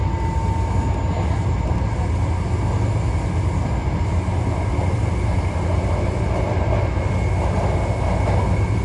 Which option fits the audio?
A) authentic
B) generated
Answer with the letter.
A